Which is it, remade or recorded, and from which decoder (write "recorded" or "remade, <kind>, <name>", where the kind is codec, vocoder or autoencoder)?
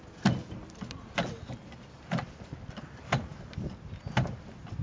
recorded